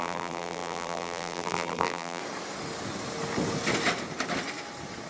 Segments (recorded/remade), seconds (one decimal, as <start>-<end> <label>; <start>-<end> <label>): 0.0-2.2 remade; 2.2-5.1 recorded